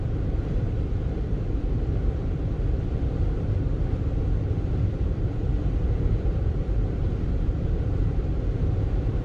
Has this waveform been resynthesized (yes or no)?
yes